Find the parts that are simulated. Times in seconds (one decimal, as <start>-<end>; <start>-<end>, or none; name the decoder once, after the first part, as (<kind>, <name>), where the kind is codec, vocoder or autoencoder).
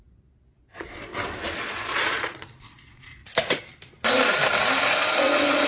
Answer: 0.0-1.1 (vocoder, Vocos); 1.7-3.2; 5.0-5.7